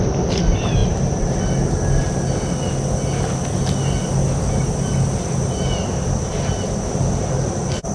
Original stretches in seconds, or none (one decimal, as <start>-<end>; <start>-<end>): 0.0-7.9